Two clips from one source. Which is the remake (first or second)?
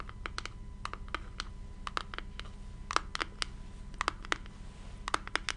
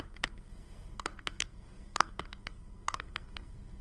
second